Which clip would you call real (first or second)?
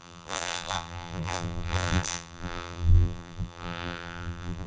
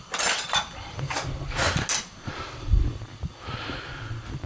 second